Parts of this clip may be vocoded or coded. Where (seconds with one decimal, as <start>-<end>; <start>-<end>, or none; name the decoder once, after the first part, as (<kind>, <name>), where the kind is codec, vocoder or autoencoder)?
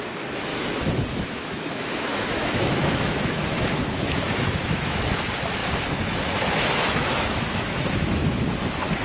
0.5-5.0 (autoencoder, DAC-VAE); 5.6-8.4